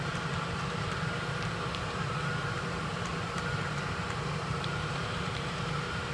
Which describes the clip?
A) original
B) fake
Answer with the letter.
B